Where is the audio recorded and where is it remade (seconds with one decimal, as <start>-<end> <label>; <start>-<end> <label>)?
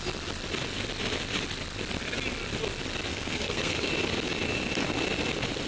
0.0-3.1 recorded; 3.1-3.9 remade; 3.9-5.7 recorded